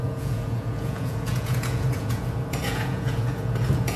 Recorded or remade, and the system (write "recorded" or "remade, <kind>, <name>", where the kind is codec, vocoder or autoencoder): remade, vocoder, Vocos